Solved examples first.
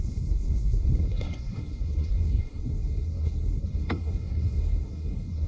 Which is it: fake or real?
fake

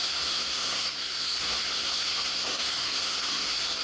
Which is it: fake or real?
fake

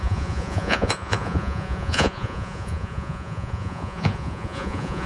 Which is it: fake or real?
fake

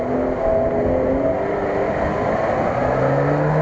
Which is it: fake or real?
real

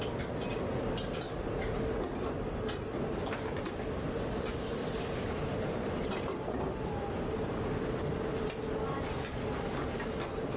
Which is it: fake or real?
real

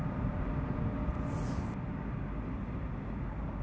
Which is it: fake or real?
real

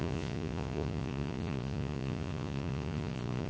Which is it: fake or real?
fake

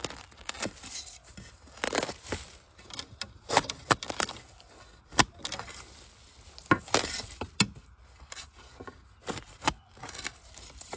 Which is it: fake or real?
real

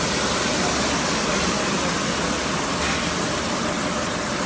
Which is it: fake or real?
real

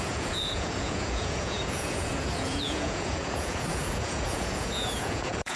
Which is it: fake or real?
fake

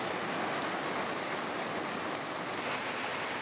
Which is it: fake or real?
real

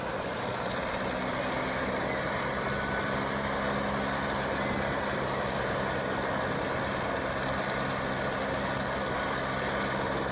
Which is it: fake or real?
real